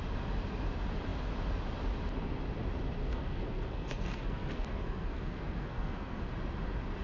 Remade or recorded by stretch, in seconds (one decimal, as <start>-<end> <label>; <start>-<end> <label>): 0.0-3.0 recorded; 3.0-6.3 remade; 6.3-7.0 recorded